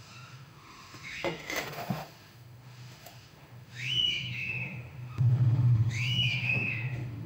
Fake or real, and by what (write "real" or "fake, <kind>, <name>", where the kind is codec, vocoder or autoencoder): fake, autoencoder, DAC-VAE